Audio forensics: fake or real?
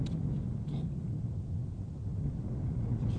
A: real